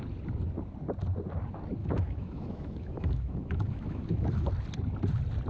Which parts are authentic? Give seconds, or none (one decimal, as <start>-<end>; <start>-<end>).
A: 0.0-1.8; 4.5-5.5